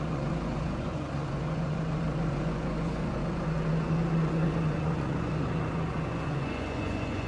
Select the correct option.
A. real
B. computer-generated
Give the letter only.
B